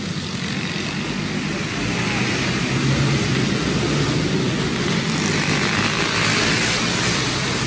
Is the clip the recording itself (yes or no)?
yes